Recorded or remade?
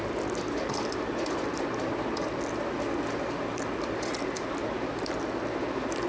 recorded